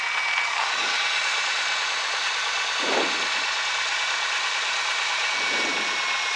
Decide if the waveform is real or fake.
real